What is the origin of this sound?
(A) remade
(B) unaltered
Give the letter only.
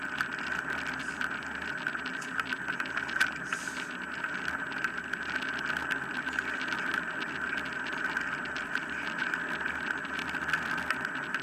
B